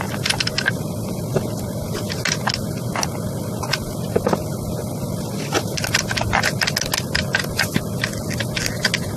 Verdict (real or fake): real